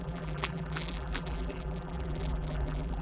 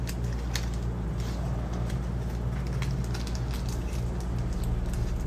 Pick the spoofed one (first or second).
first